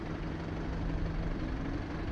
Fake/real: fake